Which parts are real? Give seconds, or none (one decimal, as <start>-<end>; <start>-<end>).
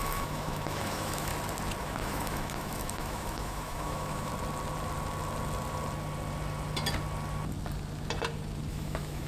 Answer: 1.3-1.8; 4.3-8.7